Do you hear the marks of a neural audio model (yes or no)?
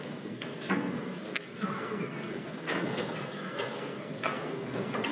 yes